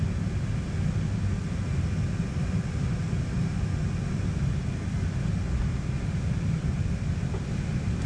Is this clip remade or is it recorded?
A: recorded